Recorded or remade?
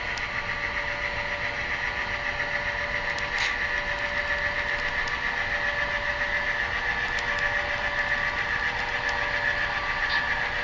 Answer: recorded